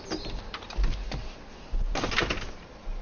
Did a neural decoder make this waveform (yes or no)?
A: no